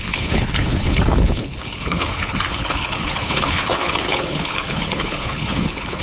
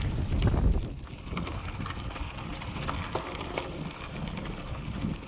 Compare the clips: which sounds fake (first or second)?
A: first